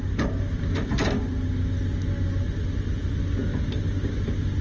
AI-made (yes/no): no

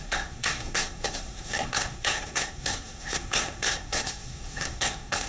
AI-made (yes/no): yes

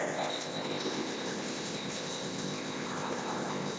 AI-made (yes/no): yes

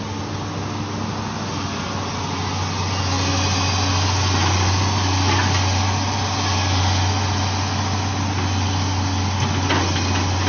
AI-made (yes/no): no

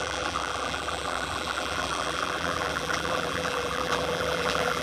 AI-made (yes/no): yes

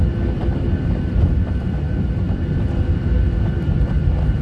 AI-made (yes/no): yes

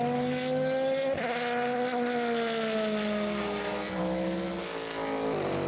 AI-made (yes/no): no